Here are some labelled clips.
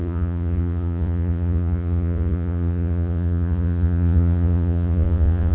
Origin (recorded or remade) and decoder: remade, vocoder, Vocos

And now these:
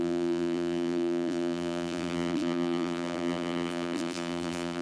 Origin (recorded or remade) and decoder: remade, vocoder, BigVGAN v2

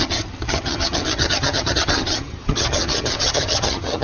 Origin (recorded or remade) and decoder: remade, vocoder, HiFi-GAN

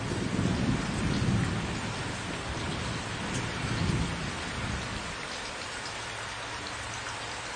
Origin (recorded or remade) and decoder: recorded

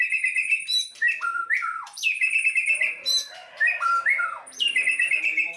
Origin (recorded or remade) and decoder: remade, vocoder, BigVGAN v2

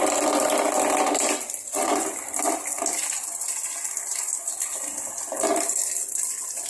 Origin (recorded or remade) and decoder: recorded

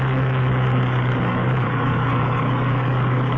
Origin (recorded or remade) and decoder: remade, codec, DAC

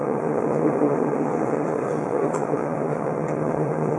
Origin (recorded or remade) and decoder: remade, vocoder, Vocos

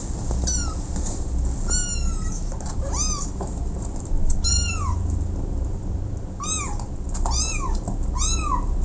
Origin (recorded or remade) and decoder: recorded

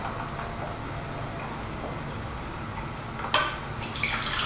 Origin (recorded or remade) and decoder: recorded